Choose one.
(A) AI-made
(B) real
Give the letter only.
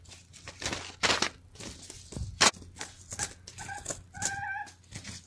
B